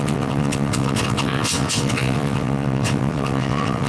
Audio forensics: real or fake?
fake